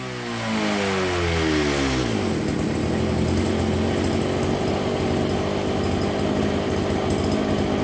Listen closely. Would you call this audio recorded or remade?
recorded